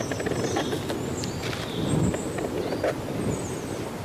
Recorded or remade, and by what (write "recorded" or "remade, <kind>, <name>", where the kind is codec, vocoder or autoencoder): recorded